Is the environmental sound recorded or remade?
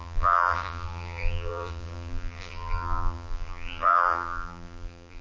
remade